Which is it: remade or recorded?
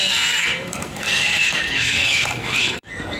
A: remade